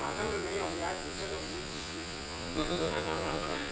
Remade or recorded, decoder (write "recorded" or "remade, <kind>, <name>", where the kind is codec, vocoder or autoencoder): remade, vocoder, Vocos